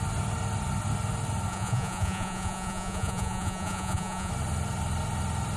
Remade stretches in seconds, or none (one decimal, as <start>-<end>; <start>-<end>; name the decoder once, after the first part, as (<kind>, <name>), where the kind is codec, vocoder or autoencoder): 1.5-4.3 (vocoder, Vocos)